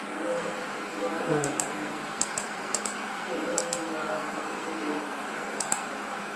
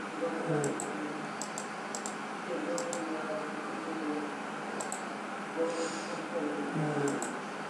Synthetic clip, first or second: first